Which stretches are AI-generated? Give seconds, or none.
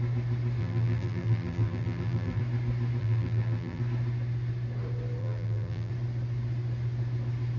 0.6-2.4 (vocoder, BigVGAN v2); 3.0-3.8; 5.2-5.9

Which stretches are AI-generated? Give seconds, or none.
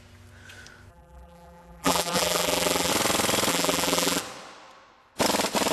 0.9-2.9 (vocoder, BigVGAN v2); 3.5-4.2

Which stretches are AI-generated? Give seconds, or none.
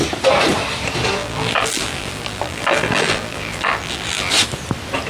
1.2-4.3 (vocoder, BigVGAN v2)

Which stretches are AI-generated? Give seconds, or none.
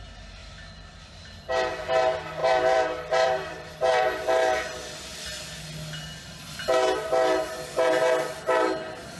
0.4-1.7 (vocoder, BigVGAN v2); 2.4-4.6